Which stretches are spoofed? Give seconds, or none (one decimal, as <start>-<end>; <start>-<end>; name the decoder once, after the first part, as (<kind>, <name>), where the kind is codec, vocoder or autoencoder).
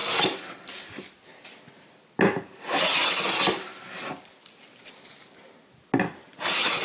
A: none